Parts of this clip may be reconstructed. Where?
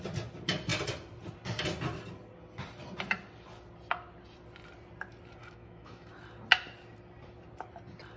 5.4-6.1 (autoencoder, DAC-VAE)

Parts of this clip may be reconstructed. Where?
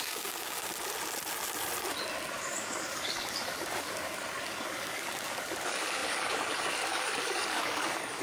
0.0-0.7 (codec, DAC); 2.3-8.2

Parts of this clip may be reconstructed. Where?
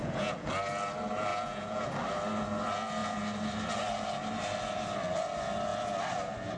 0.0-0.5 (vocoder, Vocos); 1.3-1.9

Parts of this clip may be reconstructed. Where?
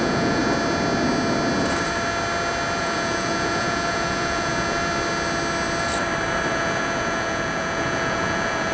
0.0-0.4 (vocoder, Vocos); 2.8-4.5; 6.5-8.7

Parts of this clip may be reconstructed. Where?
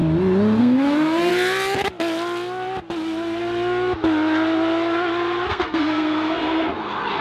0.6-1.3 (codec, SNAC); 5.5-7.2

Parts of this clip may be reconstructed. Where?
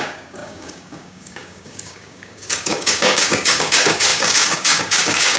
0.0-5.4 (codec, DAC)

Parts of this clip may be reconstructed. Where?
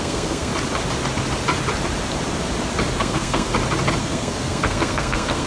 0.0-0.5 (codec, SNAC); 3.0-3.5; 4.0-5.5